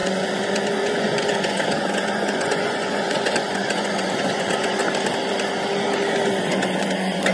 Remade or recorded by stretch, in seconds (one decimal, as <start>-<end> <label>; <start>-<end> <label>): 0.0-4.8 remade; 4.8-6.4 recorded; 6.4-7.3 remade